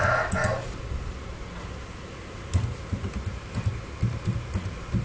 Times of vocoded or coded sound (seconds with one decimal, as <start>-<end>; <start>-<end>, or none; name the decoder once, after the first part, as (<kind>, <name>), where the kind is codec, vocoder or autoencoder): none